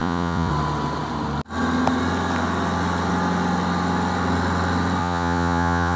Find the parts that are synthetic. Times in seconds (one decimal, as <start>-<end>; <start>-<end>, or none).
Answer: 0.0-0.5; 5.0-6.0